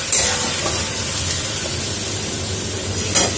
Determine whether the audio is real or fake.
real